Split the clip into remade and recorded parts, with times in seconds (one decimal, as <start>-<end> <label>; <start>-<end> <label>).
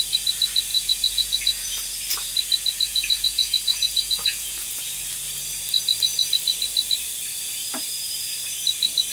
0.0-0.7 recorded; 0.7-1.7 remade; 1.7-2.9 recorded; 2.9-4.8 remade; 4.8-9.1 recorded